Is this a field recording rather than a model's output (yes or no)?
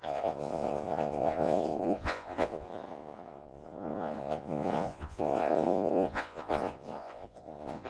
no